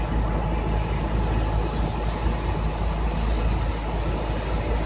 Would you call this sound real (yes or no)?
yes